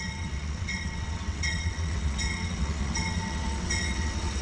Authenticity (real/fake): fake